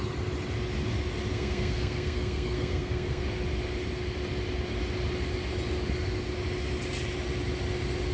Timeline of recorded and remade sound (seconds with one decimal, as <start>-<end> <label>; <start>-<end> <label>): 0.0-1.3 recorded; 1.3-3.2 remade; 3.2-8.1 recorded